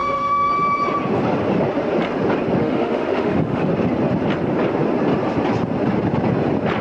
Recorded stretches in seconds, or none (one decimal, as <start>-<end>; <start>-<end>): 0.5-2.6; 3.7-6.8